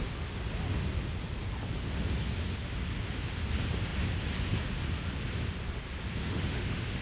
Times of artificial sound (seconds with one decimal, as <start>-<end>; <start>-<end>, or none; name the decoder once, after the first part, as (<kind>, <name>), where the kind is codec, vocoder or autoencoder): 6.2-7.0 (autoencoder, DAC-VAE)